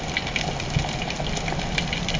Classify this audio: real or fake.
real